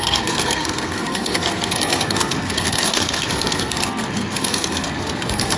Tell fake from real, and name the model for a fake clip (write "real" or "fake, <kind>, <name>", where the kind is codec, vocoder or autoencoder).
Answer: fake, codec, SNAC